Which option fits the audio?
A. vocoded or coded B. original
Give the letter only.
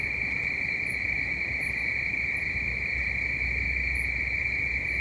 B